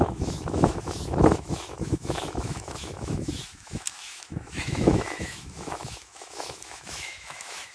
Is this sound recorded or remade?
remade